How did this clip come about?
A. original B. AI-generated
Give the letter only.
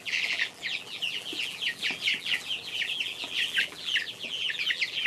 B